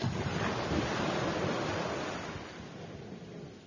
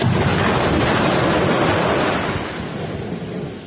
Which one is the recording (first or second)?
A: second